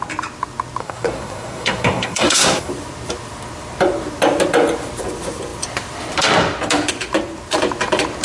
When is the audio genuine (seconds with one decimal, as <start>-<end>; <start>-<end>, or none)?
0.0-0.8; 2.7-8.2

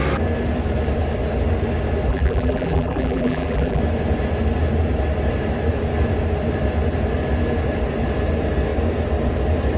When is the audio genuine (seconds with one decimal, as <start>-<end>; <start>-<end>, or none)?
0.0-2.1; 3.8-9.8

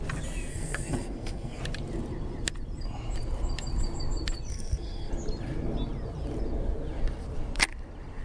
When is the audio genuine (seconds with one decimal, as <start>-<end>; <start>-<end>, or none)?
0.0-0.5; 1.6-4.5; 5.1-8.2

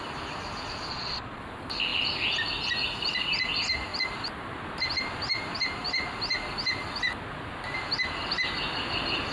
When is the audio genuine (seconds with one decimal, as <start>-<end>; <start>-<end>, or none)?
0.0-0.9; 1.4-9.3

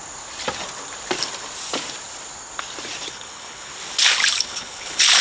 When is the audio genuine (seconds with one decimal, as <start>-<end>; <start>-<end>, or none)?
0.0-3.1; 3.7-4.4

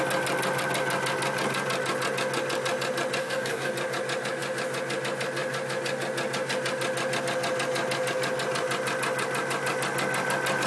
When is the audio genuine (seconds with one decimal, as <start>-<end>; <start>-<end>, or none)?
0.0-3.2; 3.7-10.7

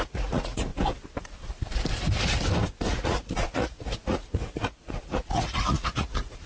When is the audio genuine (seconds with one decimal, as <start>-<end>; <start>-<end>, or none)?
0.7-2.9